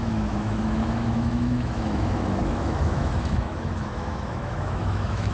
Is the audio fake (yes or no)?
yes